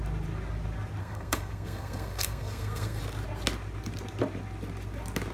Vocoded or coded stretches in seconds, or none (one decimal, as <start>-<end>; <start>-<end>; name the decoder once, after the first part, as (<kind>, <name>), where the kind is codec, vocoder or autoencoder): 1.0-3.0 (codec, SNAC)